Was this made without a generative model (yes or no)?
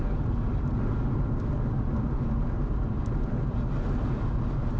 yes